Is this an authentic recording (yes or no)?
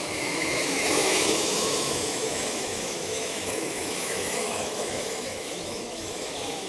no